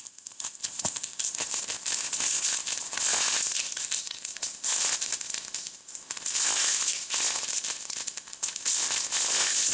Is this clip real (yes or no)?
no